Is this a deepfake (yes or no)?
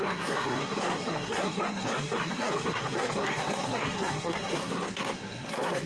yes